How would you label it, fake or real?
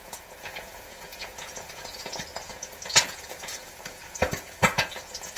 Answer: fake